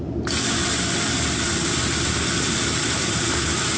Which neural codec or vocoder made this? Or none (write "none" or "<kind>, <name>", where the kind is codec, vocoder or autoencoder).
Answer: none